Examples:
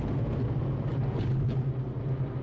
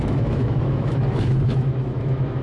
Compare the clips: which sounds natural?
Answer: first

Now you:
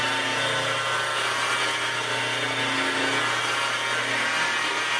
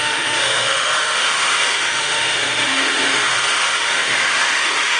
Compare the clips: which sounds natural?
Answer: first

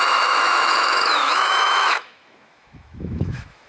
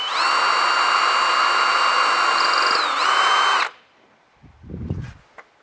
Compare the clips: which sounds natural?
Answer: second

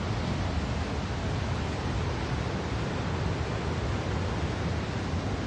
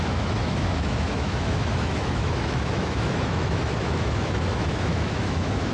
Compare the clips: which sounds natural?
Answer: first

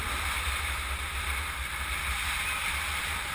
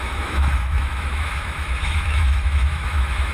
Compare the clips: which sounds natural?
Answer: first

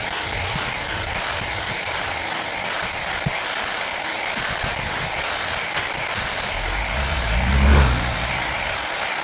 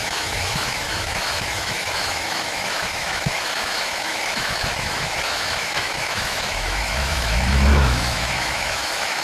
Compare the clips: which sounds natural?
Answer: first